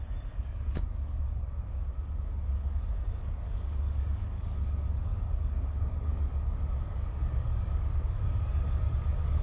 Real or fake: fake